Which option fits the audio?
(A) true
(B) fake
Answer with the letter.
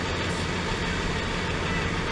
A